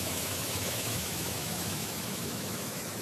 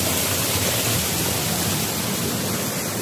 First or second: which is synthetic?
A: first